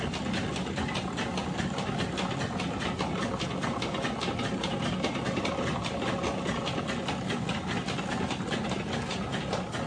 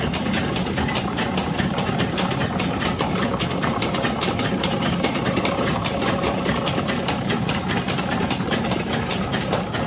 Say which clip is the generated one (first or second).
second